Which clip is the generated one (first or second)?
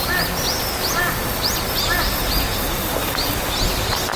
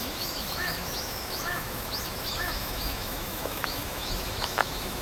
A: second